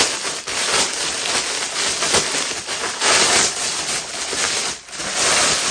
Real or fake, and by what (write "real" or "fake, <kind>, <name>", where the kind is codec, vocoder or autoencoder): real